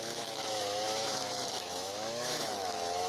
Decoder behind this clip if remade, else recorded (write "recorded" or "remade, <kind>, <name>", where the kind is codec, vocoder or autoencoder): remade, autoencoder, DAC-VAE